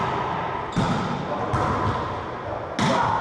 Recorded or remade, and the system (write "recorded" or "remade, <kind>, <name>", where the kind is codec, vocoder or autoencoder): recorded